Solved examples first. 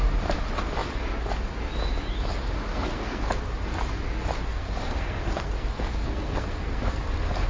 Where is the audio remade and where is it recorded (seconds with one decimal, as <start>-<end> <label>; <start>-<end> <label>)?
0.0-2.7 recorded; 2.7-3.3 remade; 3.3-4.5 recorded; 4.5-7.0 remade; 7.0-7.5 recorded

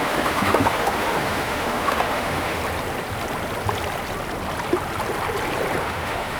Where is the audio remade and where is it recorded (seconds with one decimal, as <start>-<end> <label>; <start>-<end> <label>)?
0.0-2.6 remade; 2.6-5.8 recorded; 5.8-6.4 remade

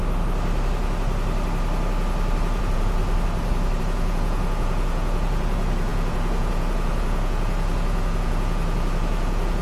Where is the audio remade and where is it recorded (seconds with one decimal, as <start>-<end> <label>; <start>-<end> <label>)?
0.0-2.6 recorded; 2.6-3.0 remade; 3.0-3.8 recorded; 3.8-9.6 remade